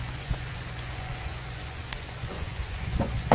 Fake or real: fake